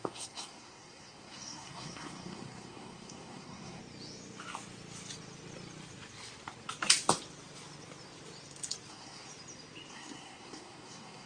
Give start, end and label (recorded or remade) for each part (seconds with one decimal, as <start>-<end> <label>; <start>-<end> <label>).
0.0-3.8 remade; 3.8-8.9 recorded; 8.9-9.3 remade; 9.3-9.9 recorded; 9.9-11.3 remade